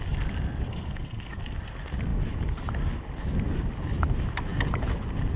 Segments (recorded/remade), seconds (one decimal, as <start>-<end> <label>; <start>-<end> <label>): 0.0-0.7 recorded; 0.7-1.4 remade; 1.4-5.4 recorded